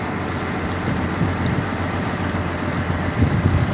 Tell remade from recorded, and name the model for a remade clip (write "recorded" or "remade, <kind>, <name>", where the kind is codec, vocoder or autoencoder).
recorded